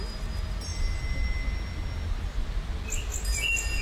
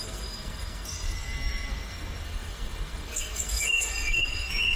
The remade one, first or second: second